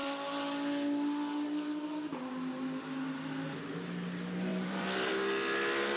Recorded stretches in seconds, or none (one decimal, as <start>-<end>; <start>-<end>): 0.0-4.5; 5.1-6.0

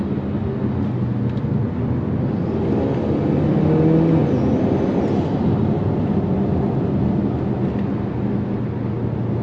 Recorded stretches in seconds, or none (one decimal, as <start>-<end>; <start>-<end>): 0.0-9.4

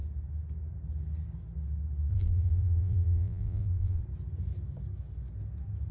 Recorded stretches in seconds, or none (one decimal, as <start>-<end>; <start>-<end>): 0.0-2.1; 4.0-5.9

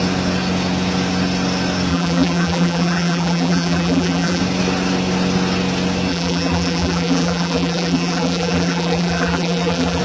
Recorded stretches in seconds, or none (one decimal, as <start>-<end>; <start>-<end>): 0.0-1.9; 4.4-6.1

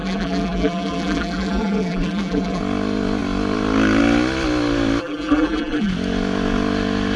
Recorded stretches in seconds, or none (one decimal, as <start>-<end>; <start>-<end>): 2.6-5.0; 5.9-7.2